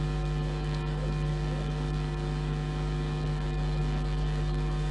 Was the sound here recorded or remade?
remade